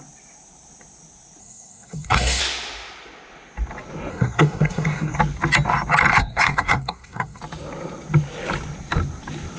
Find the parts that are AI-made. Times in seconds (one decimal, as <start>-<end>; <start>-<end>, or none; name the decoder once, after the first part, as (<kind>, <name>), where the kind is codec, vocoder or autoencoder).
1.4-2.4 (codec, SNAC); 4.1-5.2; 6.1-7.4